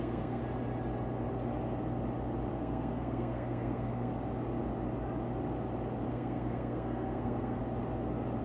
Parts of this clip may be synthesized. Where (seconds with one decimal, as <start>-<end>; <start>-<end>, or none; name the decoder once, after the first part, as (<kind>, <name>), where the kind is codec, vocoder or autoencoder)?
0.0-0.4 (codec, SNAC); 2.6-4.1; 6.1-7.6